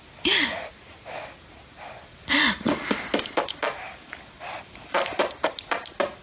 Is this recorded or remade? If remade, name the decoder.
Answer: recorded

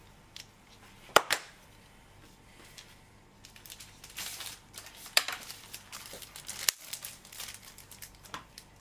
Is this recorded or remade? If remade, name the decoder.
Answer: remade, vocoder, BigVGAN v2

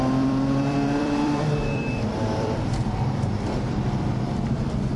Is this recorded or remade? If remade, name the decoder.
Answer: remade, vocoder, BigVGAN v2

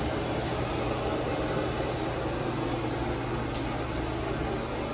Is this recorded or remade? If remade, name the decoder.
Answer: recorded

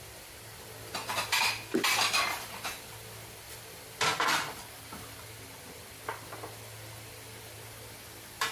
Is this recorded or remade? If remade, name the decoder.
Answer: remade, vocoder, BigVGAN v2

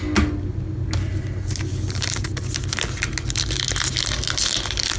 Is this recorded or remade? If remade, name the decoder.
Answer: recorded